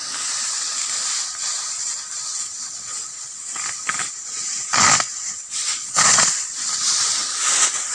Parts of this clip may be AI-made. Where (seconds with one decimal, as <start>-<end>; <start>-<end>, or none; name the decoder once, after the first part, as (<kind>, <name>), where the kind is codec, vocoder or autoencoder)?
5.7-6.4 (vocoder, Vocos)

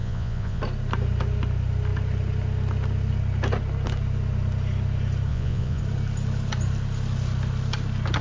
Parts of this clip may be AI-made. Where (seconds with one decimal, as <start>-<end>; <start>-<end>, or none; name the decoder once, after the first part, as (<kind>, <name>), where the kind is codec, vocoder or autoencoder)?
0.0-0.6 (vocoder, Vocos); 5.3-5.8

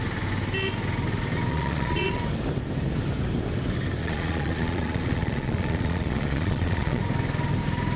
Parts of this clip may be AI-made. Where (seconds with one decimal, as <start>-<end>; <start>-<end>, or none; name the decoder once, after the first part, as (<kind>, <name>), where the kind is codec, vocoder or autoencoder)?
1.5-2.2 (vocoder, Vocos); 4.0-7.0

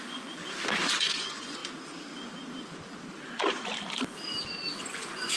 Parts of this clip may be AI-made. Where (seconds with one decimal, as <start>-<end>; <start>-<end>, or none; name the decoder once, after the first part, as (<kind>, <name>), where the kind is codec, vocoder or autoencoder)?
0.0-0.4 (vocoder, Vocos); 1.0-1.6; 4.8-5.4

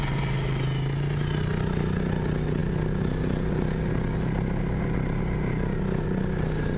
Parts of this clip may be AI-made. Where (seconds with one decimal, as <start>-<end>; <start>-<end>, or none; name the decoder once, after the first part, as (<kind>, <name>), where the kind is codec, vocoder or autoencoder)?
none

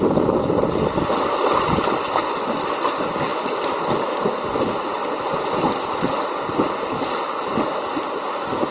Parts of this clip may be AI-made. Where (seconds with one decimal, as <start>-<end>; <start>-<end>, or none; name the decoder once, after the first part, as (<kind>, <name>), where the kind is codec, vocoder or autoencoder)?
none

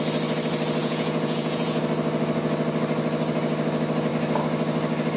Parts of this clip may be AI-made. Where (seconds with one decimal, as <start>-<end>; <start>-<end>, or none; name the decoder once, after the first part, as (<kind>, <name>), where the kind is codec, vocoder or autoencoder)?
0.8-1.8 (vocoder, Vocos)

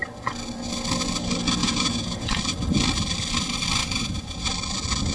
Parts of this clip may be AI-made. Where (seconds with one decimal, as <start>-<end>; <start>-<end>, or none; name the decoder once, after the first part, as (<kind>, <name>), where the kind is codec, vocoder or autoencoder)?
1.6-2.4 (vocoder, Vocos); 3.8-4.5